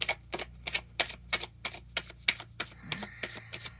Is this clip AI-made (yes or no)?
no